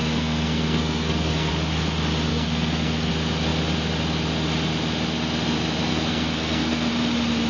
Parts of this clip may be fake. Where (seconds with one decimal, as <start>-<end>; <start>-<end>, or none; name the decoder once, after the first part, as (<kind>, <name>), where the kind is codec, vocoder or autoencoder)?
0.0-1.5 (codec, SNAC); 2.3-3.1; 5.9-6.9